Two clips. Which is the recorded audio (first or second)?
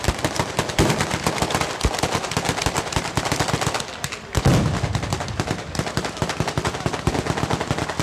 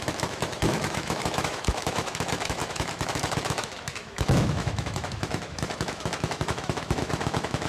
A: first